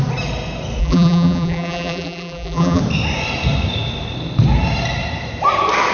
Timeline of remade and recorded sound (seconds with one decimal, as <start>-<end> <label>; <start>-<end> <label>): 0.0-0.8 recorded; 0.8-2.8 remade; 2.8-5.9 recorded